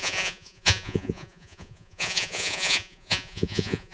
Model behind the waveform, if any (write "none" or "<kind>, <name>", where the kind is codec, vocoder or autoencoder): vocoder, Vocos